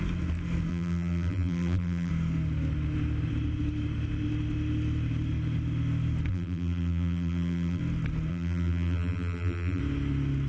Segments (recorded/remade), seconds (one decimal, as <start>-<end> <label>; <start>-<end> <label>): 0.0-0.7 recorded; 0.7-2.1 remade; 2.1-6.3 recorded; 6.3-7.8 remade; 7.8-8.3 recorded; 8.3-9.8 remade; 9.8-10.5 recorded

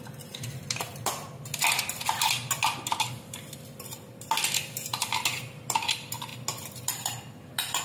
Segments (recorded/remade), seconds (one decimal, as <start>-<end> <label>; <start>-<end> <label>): 0.0-7.8 recorded

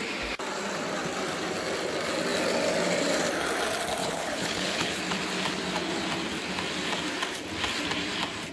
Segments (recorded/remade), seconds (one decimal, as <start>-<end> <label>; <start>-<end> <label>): 0.0-4.0 recorded; 4.0-5.0 remade; 5.0-8.5 recorded

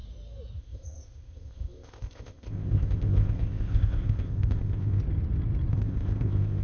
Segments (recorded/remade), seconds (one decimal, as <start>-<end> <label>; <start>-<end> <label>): 0.0-0.6 recorded; 0.6-5.0 remade; 5.0-5.7 recorded; 5.7-6.6 remade

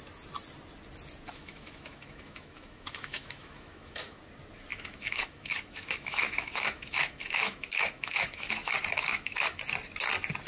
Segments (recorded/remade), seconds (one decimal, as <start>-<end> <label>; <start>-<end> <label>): 0.0-1.3 recorded; 1.3-4.2 remade; 4.2-4.7 recorded; 4.7-8.7 remade; 8.7-9.1 recorded; 9.1-9.6 remade; 9.6-10.5 recorded

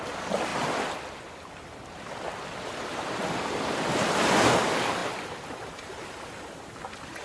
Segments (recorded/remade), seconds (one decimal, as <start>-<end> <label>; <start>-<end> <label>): 0.0-7.2 recorded

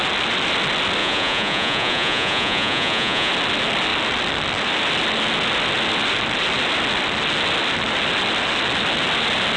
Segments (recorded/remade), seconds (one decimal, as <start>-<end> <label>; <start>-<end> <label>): 0.0-1.0 recorded; 1.0-3.3 remade; 3.3-9.6 recorded